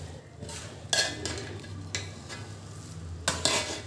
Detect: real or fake real